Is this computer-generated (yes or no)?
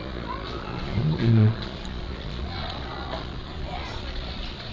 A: yes